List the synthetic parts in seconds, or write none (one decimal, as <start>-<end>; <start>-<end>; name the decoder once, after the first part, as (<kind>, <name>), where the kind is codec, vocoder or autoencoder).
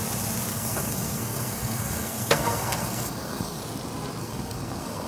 0.5-3.6 (codec, SNAC); 4.2-5.1